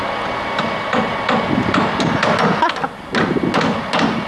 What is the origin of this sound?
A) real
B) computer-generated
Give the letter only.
A